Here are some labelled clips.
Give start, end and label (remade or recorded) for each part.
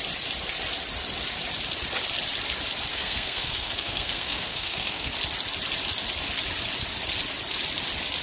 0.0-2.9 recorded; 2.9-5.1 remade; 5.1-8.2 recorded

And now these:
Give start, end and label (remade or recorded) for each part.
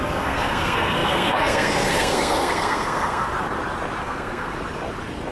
0.0-3.3 remade; 3.3-4.0 recorded; 4.0-4.5 remade; 4.5-5.3 recorded